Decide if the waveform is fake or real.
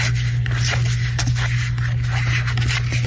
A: real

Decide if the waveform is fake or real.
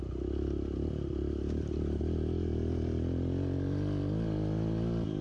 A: real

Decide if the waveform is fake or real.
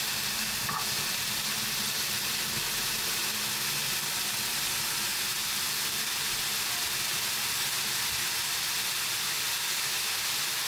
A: real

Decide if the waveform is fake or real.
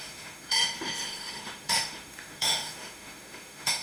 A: fake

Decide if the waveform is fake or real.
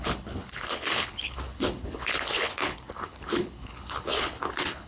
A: fake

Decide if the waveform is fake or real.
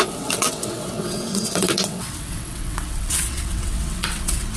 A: fake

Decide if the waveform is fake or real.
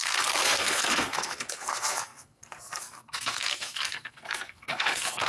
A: fake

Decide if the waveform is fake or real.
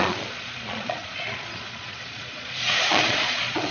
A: fake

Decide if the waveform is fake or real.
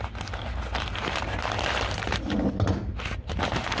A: real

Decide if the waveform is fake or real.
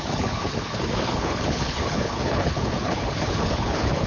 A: fake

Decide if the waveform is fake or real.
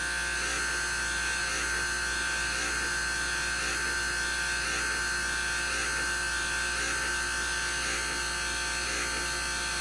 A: real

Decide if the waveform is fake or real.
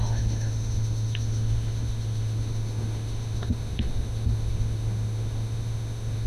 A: fake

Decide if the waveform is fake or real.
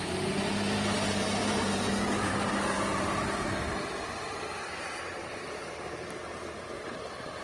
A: fake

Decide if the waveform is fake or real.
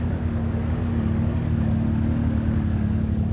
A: fake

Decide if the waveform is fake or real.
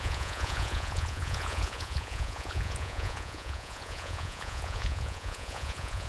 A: fake